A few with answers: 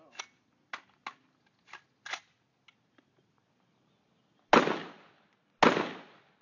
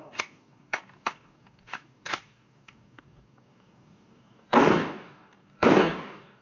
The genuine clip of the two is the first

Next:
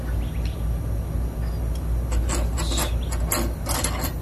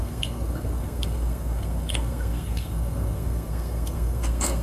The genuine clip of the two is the first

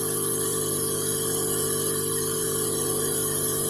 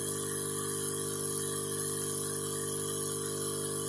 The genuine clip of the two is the second